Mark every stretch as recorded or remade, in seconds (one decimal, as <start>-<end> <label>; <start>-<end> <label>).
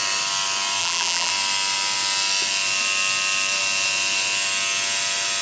0.0-0.8 recorded; 0.8-1.3 remade; 1.3-5.4 recorded